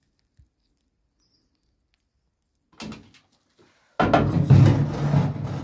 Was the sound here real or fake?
real